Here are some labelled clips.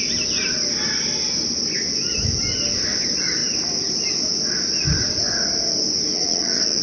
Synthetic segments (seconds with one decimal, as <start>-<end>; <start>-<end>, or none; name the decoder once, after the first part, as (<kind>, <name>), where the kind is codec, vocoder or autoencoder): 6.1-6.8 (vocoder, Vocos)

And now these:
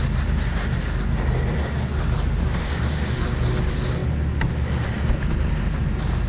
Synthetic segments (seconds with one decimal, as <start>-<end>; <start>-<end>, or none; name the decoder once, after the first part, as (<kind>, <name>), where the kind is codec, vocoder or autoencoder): none

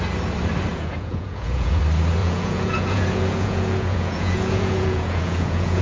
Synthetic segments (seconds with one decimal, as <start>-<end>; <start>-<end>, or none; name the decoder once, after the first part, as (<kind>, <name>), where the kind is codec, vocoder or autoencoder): 0.7-1.8 (vocoder, Vocos); 2.2-5.8

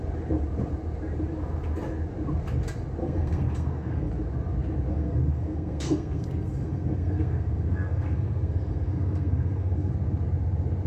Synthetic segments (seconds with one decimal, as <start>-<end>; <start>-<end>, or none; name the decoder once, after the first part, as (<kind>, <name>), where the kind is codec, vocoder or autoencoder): 3.0-4.1 (codec, SNAC); 4.9-9.9

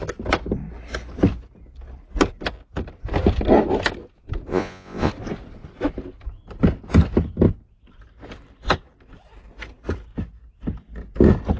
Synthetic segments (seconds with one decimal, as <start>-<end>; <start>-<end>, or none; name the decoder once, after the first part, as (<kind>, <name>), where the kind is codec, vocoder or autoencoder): 4.5-5.1 (vocoder, Vocos)

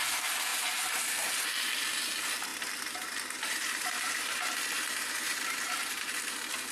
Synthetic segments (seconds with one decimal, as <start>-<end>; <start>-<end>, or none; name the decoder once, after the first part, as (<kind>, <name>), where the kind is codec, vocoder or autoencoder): 2.5-6.7 (vocoder, BigVGAN v2)